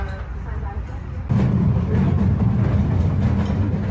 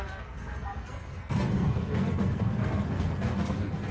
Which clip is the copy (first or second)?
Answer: second